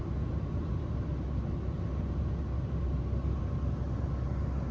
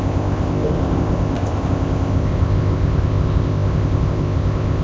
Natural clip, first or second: first